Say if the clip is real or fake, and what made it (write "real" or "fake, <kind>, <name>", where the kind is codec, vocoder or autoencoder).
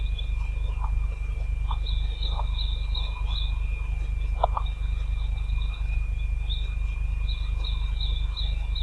real